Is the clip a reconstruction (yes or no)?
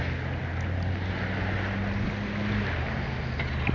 no